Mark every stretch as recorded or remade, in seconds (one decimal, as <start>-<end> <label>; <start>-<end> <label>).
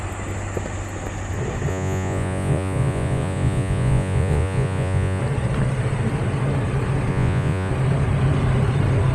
0.0-1.7 recorded; 1.7-5.2 remade; 5.2-7.1 recorded; 7.1-7.7 remade; 7.7-9.1 recorded